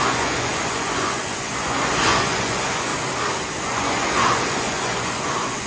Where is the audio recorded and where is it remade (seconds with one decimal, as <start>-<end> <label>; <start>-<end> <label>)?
0.0-2.9 remade; 2.9-3.6 recorded; 3.6-5.7 remade